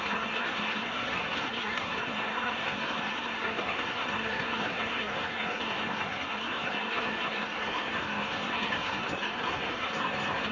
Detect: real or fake fake